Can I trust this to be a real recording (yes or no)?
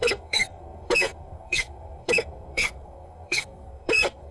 no